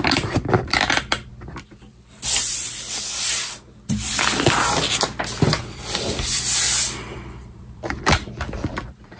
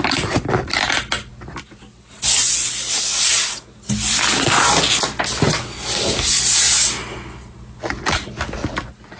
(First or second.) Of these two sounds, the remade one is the first